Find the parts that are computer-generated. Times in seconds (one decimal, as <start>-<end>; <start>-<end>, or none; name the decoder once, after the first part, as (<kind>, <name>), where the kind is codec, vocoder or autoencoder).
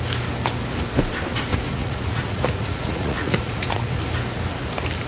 1.5-4.0 (vocoder, Vocos)